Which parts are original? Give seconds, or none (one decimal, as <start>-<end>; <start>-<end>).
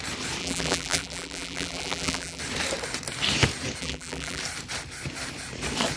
0.0-0.4; 2.4-3.8; 4.4-6.0